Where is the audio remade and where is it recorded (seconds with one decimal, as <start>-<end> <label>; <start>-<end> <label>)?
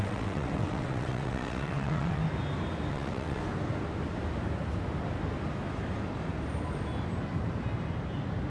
0.0-2.2 remade; 2.2-2.9 recorded; 2.9-3.4 remade; 3.4-8.5 recorded